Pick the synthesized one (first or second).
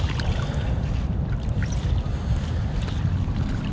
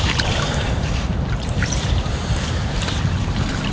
second